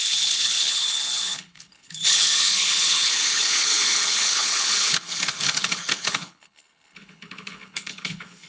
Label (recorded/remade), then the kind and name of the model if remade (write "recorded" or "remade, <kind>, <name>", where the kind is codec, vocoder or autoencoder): remade, codec, HILCodec